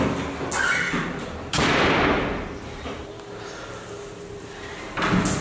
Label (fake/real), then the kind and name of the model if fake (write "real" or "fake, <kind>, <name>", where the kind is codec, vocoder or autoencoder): real